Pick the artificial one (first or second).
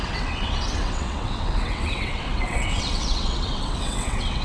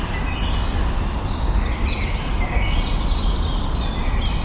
first